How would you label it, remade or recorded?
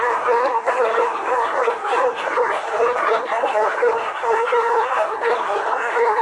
remade